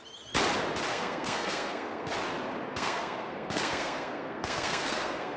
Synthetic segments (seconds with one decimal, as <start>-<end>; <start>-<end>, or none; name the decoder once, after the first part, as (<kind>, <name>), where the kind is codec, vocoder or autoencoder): 0.9-2.1 (codec, SNAC); 2.7-5.4